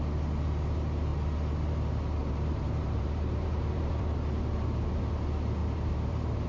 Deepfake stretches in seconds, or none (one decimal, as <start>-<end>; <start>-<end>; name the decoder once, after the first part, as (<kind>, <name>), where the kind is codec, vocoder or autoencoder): 2.2-4.0 (vocoder, BigVGAN v2); 5.6-6.5